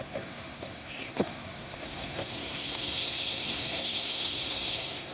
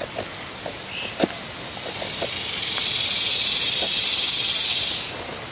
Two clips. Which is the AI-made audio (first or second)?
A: first